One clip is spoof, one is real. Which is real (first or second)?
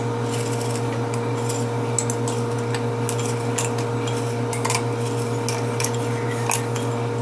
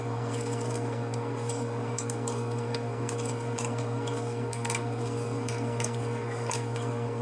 first